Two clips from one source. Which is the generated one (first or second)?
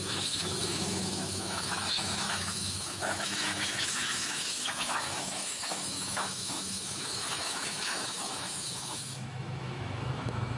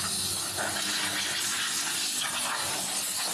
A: first